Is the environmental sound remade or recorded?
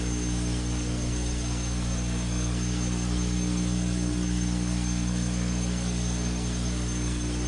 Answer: remade